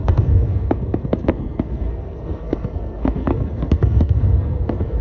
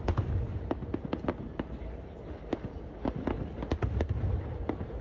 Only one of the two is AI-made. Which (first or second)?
first